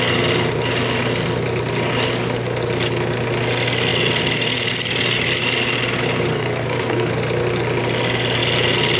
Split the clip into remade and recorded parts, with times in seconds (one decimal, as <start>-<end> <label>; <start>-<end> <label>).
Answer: 0.0-6.3 recorded; 6.3-7.1 remade; 7.1-9.0 recorded